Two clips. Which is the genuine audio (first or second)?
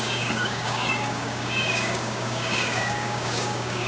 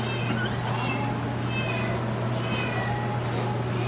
second